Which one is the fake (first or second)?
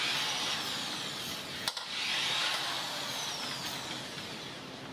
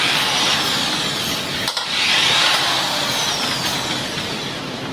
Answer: second